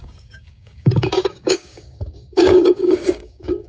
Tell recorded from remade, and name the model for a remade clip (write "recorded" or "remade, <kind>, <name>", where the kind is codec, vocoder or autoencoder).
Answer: remade, codec, DAC